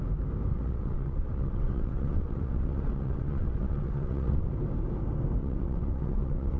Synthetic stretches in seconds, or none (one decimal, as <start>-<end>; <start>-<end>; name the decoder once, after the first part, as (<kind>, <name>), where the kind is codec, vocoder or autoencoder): 0.5-4.5 (vocoder, WaveNeXt); 5.4-6.6